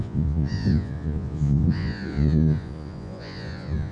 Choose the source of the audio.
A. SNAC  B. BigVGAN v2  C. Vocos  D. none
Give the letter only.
C